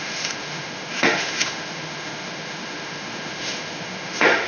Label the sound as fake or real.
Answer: fake